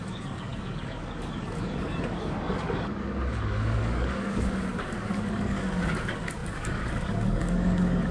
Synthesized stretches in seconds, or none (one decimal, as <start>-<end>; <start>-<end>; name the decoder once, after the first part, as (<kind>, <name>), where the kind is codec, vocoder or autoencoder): 0.0-8.1 (codec, DAC)